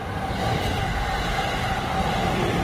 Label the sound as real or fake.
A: real